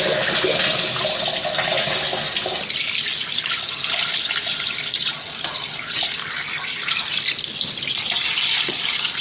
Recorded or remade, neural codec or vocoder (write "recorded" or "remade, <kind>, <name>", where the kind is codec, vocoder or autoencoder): recorded